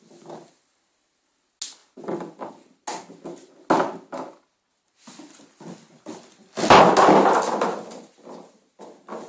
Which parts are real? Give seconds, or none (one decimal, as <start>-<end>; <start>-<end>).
0.0-9.3